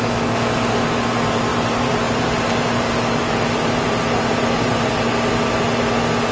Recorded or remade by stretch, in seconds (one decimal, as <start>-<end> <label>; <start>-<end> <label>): 0.0-1.5 recorded; 1.5-5.3 remade; 5.3-6.3 recorded

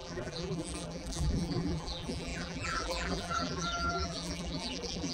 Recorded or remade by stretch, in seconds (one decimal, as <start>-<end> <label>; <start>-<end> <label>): 0.0-5.1 remade

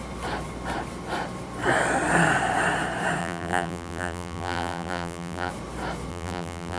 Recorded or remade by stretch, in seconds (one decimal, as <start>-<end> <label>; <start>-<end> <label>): 0.0-3.2 recorded; 3.2-5.5 remade; 5.5-6.1 recorded; 6.1-6.8 remade